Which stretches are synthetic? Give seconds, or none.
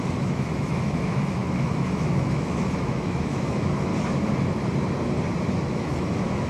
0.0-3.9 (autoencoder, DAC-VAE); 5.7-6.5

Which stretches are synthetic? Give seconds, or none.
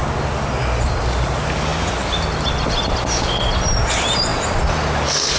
none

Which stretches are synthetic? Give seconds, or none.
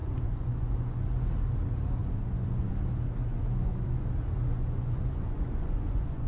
0.0-1.3 (vocoder, Vocos); 2.0-2.7; 3.3-4.1; 4.5-6.3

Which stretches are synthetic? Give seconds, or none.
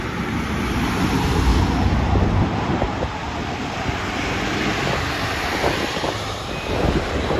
0.0-1.5 (vocoder, BigVGAN v2); 2.6-3.2; 5.9-7.4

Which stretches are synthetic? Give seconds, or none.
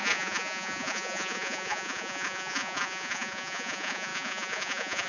0.0-5.1 (vocoder, Vocos)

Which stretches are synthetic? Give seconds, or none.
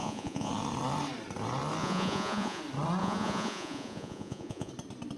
0.0-0.5 (vocoder, Vocos); 1.8-2.6; 3.0-4.7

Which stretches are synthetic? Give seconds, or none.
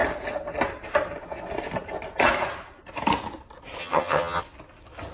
3.8-4.4 (vocoder, HiFi-GAN)